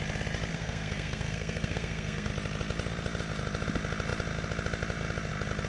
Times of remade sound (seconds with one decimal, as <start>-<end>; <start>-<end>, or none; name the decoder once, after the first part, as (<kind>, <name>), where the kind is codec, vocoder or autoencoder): 0.5-2.3 (codec, SNAC)